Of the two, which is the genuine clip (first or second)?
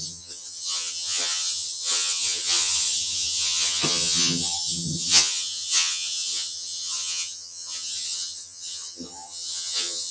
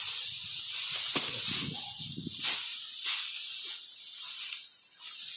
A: second